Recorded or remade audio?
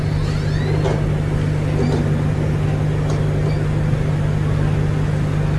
recorded